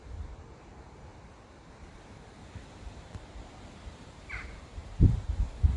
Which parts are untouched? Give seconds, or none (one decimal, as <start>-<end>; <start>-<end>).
0.0-2.8